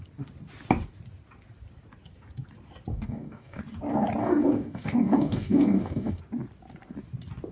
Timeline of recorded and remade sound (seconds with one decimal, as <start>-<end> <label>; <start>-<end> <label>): 0.0-2.9 recorded; 2.9-3.6 remade; 3.6-4.2 recorded; 4.2-6.2 remade; 6.2-7.5 recorded